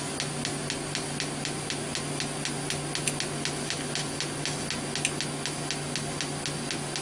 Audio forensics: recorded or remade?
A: recorded